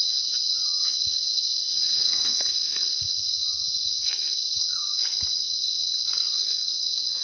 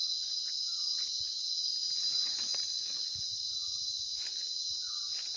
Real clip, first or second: second